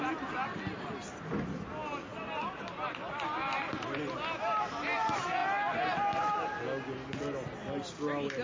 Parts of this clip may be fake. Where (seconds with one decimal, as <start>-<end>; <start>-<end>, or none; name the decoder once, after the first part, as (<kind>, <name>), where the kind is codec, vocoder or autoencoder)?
none